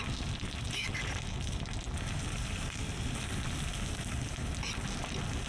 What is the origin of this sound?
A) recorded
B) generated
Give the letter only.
A